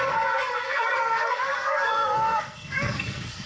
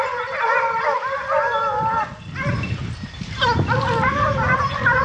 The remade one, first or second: first